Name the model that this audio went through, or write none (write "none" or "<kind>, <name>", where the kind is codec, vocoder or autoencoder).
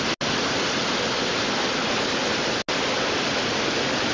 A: none